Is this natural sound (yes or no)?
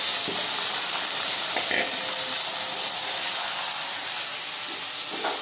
yes